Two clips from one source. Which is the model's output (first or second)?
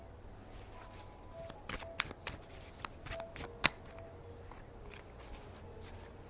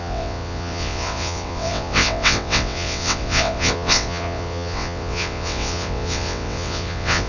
second